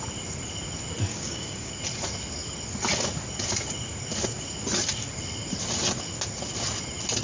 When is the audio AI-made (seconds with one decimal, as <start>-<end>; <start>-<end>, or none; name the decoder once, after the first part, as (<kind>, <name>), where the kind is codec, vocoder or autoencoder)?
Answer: 1.1-1.7 (codec, DAC)